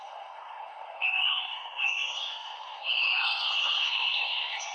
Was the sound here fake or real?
fake